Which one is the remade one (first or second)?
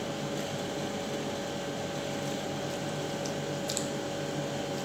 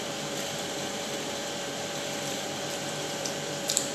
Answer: second